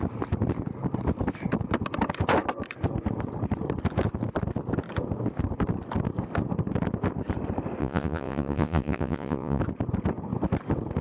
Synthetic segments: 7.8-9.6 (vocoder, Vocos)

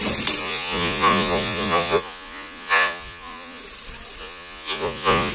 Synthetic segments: 0.4-3.6 (vocoder, Vocos); 4.2-5.3

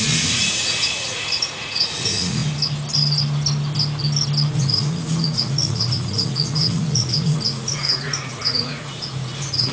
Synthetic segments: 0.0-2.4 (vocoder, Vocos); 4.5-9.7

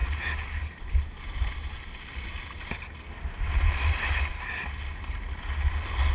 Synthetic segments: none

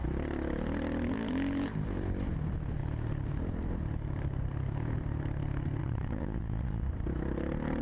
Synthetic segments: 5.8-6.9 (vocoder, Vocos)

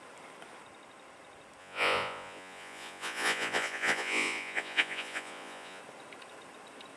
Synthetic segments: 1.6-5.8 (vocoder, Vocos)